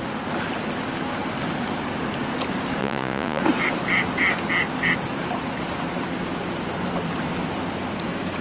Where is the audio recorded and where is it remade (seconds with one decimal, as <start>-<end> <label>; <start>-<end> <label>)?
0.0-2.8 recorded; 2.8-3.4 remade; 3.4-8.4 recorded